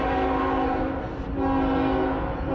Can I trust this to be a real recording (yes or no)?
yes